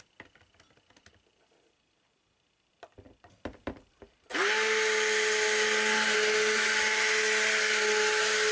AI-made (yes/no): no